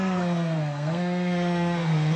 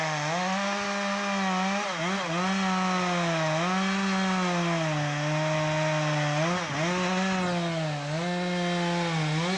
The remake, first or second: first